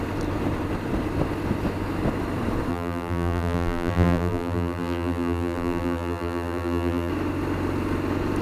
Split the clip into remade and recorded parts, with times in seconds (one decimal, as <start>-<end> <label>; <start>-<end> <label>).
0.0-2.7 recorded; 2.7-7.1 remade; 7.1-8.4 recorded